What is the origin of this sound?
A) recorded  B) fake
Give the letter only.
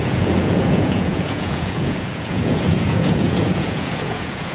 B